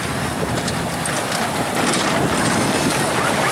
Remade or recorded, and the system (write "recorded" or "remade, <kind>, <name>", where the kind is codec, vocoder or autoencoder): recorded